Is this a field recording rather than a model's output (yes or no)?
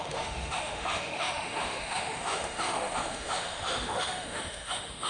no